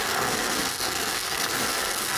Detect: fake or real fake